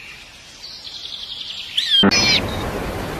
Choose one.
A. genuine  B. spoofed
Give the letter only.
A